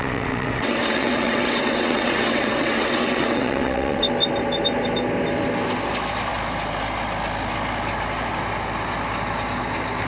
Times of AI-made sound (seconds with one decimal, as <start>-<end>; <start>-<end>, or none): 0.0-4.0